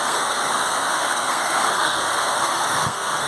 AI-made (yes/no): yes